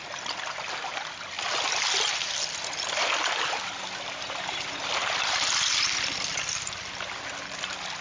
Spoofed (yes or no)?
no